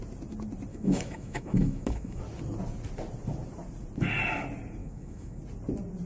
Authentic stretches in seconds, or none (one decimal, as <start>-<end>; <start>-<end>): 0.0-0.7; 2.2-4.8; 5.4-6.1